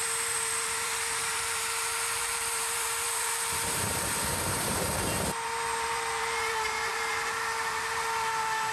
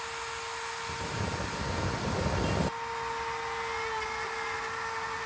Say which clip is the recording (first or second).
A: second